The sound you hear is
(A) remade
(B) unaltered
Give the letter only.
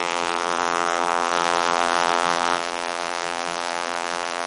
A